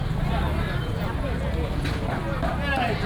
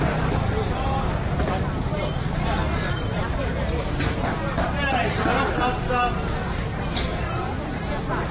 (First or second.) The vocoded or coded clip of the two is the second